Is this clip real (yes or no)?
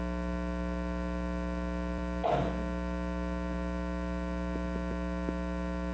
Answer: yes